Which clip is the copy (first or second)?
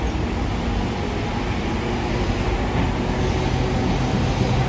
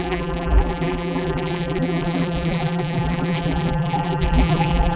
second